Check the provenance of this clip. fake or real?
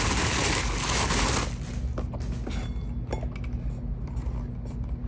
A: real